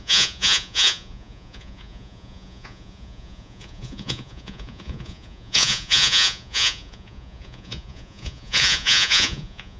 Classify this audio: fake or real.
fake